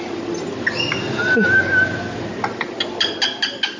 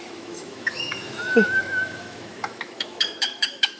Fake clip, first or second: second